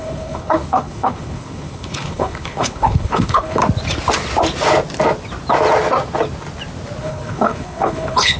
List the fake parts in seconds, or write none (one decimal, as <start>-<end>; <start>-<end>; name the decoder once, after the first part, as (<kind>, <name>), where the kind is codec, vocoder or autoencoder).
0.0-3.6 (codec, HILCodec); 7.0-8.4